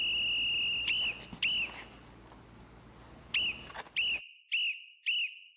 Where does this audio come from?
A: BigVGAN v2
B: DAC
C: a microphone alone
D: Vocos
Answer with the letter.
C